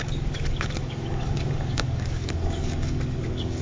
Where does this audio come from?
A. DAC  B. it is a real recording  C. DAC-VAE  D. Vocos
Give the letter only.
A